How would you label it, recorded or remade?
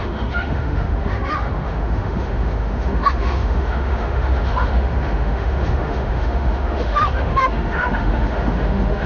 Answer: remade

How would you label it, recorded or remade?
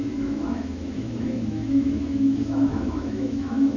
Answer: remade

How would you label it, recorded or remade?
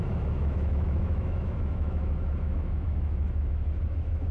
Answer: remade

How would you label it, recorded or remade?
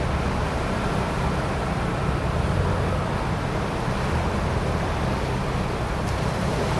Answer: recorded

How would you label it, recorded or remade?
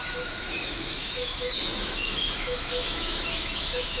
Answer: remade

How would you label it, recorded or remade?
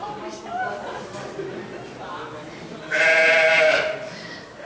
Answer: recorded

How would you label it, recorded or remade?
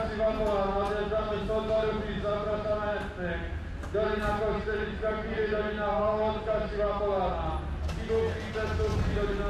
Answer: recorded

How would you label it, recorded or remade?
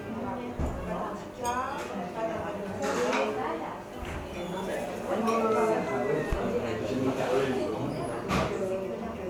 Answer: recorded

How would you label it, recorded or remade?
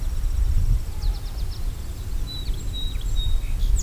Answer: recorded